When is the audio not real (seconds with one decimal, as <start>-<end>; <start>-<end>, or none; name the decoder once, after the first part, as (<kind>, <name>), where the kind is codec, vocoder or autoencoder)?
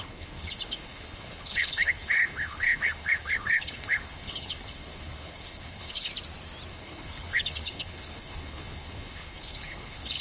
0.0-6.1 (codec, HILCodec); 6.7-10.2